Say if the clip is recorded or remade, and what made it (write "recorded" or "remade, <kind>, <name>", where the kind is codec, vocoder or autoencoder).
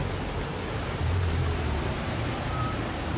recorded